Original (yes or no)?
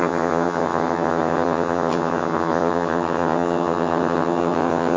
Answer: no